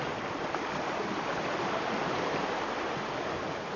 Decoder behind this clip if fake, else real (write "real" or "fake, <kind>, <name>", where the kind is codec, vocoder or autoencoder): real